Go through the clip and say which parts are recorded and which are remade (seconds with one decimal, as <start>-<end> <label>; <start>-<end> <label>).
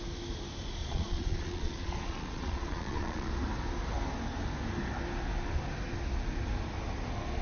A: 0.0-0.8 recorded; 0.8-3.3 remade; 3.3-7.4 recorded